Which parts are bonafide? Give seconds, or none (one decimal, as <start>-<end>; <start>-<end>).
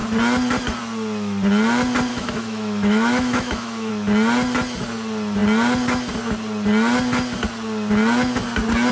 0.0-2.1; 3.9-8.9